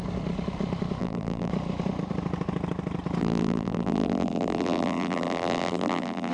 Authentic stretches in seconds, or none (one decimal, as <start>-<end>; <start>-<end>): 0.0-1.0; 1.5-3.2

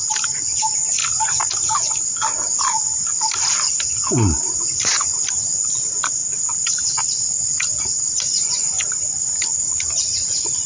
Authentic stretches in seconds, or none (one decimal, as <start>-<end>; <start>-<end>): 0.0-10.7

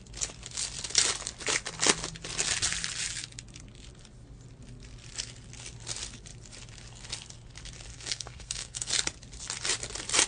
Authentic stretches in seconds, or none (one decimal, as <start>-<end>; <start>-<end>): 0.0-7.9; 8.9-10.3